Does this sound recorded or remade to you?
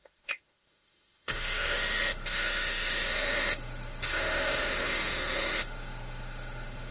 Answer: remade